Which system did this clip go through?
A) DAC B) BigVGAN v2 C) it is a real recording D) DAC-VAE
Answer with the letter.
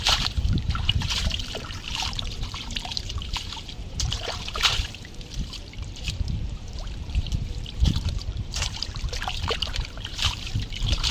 B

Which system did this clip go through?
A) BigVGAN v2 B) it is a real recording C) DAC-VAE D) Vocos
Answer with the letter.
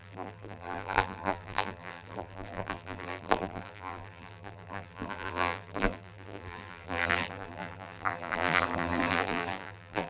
A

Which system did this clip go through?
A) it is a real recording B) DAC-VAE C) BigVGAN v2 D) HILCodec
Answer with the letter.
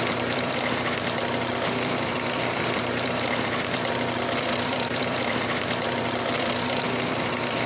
C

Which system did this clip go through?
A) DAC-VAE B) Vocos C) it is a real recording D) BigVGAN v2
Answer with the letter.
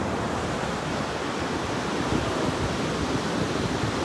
C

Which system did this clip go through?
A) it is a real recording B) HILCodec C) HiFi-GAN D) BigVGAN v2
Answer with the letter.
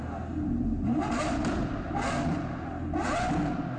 A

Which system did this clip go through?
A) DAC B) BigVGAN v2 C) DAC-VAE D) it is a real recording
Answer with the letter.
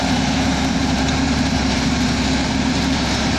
B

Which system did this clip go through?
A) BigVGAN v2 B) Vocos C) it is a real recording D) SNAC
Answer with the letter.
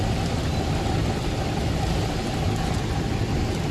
C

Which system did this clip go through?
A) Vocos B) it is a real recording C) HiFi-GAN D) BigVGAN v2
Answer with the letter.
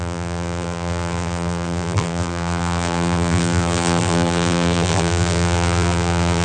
D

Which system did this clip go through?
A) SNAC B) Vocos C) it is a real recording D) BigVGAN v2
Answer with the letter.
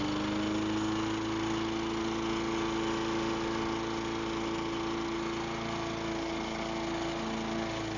C